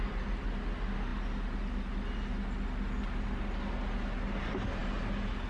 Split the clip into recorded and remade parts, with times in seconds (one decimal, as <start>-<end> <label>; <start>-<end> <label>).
0.0-5.5 recorded